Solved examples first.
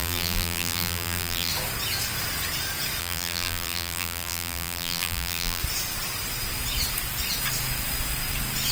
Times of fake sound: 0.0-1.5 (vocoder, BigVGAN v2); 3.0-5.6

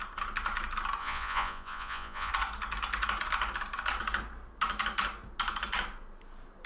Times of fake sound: 1.0-2.3 (vocoder, Vocos)